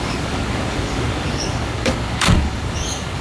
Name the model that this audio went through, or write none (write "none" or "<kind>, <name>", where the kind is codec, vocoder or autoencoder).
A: codec, DAC